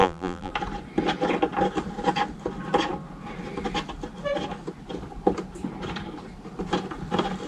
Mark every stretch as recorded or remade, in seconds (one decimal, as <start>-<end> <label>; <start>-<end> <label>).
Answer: 0.0-0.5 remade; 0.5-7.5 recorded